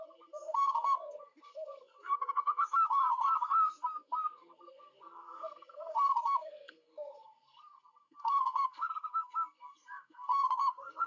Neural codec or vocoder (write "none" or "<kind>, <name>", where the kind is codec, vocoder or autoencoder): codec, SNAC